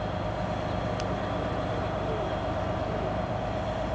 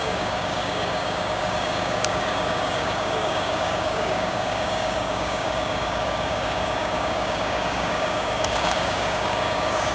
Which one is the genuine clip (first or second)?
first